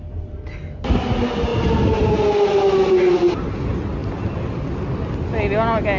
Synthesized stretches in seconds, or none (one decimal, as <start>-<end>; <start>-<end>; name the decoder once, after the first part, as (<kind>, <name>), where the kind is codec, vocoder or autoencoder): none